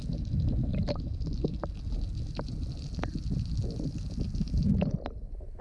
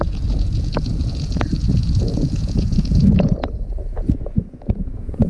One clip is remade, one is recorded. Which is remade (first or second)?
second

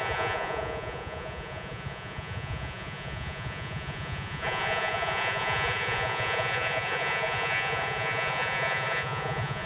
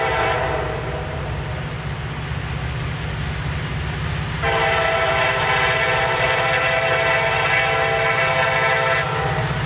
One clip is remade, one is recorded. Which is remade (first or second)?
first